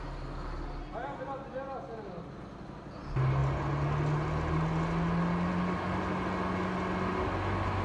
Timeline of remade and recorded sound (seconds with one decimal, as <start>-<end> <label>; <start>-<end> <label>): 0.0-7.8 recorded